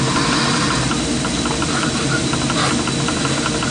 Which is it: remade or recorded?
recorded